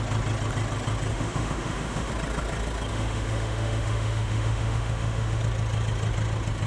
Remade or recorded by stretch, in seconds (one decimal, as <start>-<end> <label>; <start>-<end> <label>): 0.0-1.1 recorded; 1.1-2.1 remade; 2.1-2.9 recorded; 2.9-5.4 remade; 5.4-6.7 recorded